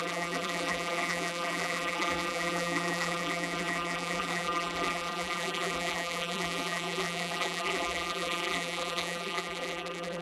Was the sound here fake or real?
fake